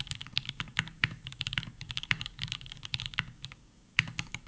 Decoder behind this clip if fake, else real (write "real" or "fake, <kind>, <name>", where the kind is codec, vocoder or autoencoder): fake, codec, DAC